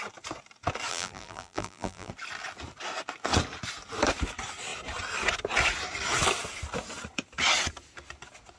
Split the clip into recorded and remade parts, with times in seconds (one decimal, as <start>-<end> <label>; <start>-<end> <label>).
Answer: 0.0-0.9 recorded; 0.9-2.1 remade; 2.1-8.6 recorded